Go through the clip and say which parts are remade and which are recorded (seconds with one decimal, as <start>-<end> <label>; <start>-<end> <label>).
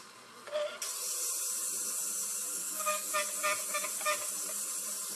0.0-2.5 recorded; 2.5-3.1 remade; 3.1-5.1 recorded